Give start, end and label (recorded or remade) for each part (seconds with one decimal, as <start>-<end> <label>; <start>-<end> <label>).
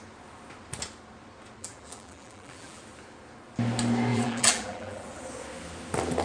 0.0-1.6 recorded; 1.6-2.8 remade; 2.8-4.1 recorded; 4.1-5.2 remade; 5.2-6.2 recorded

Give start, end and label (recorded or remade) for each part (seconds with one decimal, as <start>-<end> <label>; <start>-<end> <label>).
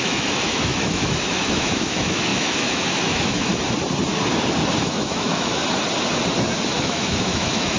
0.0-3.5 remade; 3.5-4.8 recorded; 4.8-5.6 remade; 5.6-6.8 recorded; 6.8-7.8 remade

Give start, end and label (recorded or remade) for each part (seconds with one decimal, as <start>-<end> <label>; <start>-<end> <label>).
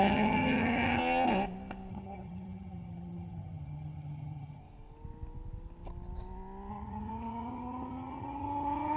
0.0-1.0 remade; 1.0-1.9 recorded; 1.9-4.6 remade; 4.6-6.7 recorded; 6.7-9.0 remade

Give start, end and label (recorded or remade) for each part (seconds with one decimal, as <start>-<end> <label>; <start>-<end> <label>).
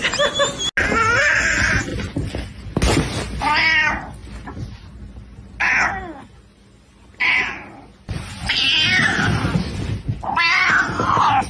0.0-11.5 recorded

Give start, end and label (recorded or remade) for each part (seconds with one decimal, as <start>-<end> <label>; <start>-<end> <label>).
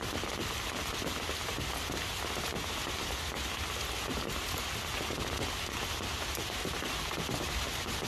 0.0-8.1 recorded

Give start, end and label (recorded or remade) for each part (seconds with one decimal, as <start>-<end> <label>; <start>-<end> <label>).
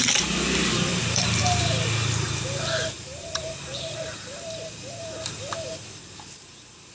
0.0-0.9 recorded; 0.9-1.4 remade; 1.4-3.1 recorded; 3.1-5.4 remade; 5.4-6.9 recorded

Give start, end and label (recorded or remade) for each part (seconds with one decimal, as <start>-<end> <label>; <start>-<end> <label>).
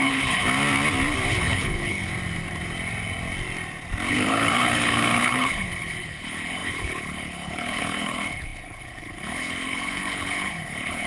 0.0-0.4 remade; 0.4-1.3 recorded; 1.3-2.1 remade; 2.1-4.1 recorded; 4.1-11.1 remade